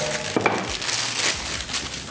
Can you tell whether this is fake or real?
real